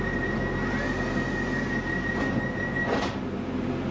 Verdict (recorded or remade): recorded